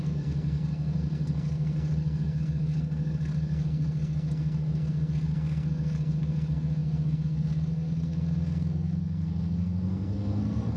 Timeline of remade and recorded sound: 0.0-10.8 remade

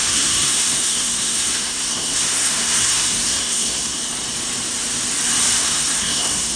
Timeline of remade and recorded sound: 0.0-4.0 remade; 4.0-5.6 recorded; 5.6-6.6 remade

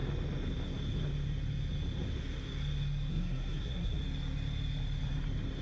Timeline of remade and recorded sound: 0.0-3.1 recorded; 3.1-4.0 remade; 4.0-5.6 recorded